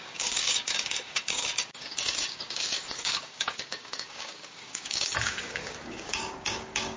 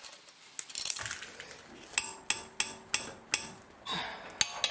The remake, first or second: first